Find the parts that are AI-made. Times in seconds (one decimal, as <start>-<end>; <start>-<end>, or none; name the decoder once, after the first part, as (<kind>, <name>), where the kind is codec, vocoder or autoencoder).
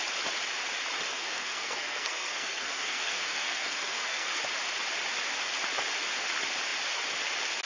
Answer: 1.1-4.4 (codec, SNAC)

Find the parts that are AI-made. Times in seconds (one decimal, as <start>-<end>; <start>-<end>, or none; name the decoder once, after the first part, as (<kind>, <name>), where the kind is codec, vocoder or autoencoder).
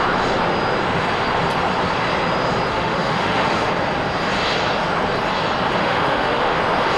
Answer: 2.7-3.7 (autoencoder, DAC-VAE); 5.8-6.6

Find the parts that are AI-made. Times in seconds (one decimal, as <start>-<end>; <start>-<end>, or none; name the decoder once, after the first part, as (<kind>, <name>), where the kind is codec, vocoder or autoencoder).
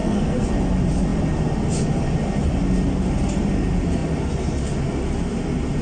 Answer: 0.0-0.5 (codec, SNAC)